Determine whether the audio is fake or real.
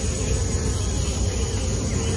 real